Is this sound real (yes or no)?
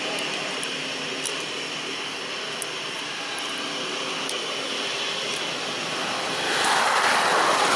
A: yes